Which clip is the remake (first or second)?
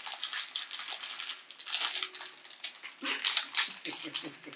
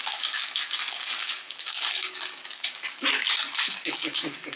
second